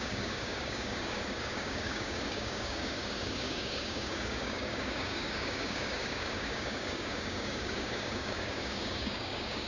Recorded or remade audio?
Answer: remade